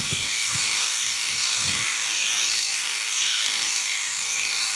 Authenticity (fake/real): fake